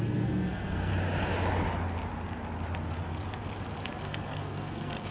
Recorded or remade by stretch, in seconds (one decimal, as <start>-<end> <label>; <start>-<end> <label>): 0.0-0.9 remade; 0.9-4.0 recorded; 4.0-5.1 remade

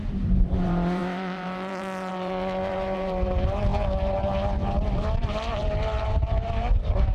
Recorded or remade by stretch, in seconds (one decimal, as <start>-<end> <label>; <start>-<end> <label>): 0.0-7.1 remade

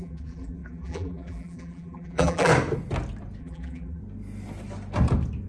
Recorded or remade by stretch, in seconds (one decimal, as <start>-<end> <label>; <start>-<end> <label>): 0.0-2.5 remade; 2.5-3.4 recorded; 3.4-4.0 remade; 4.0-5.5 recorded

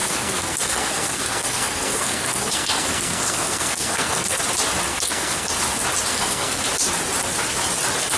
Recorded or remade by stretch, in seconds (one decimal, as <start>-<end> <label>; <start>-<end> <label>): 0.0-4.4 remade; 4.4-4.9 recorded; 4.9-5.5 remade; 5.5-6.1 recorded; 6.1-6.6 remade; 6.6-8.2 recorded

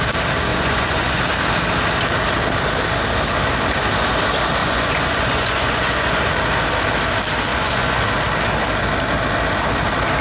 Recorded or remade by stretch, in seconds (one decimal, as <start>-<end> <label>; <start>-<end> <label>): 0.0-0.5 recorded; 0.5-1.2 remade; 1.2-4.6 recorded; 4.6-6.2 remade; 6.2-7.5 recorded; 7.5-8.0 remade; 8.0-10.2 recorded

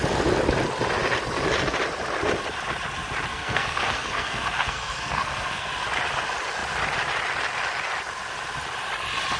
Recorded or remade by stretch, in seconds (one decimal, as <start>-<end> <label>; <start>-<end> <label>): 0.0-3.3 recorded; 3.3-5.7 remade; 5.7-9.4 recorded

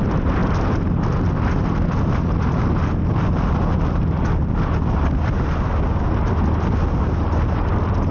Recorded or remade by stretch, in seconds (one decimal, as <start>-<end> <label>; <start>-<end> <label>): 0.0-8.1 recorded

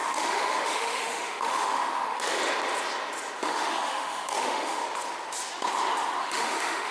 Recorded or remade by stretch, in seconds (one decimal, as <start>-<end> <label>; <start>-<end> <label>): 0.0-2.4 remade; 2.4-3.4 recorded; 3.4-4.8 remade; 4.8-6.2 recorded; 6.2-6.9 remade